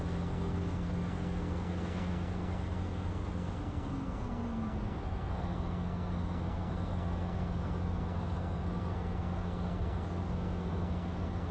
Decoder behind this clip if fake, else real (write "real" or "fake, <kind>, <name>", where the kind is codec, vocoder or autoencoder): fake, codec, SNAC